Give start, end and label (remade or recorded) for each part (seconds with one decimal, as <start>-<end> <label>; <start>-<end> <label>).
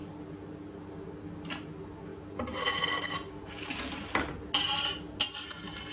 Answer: 0.0-5.9 recorded